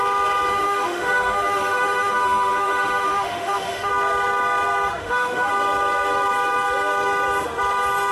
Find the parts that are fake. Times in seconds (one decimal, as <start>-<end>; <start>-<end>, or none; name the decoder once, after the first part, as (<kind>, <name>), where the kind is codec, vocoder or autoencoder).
0.5-3.9 (autoencoder, DAC-VAE); 5.0-5.5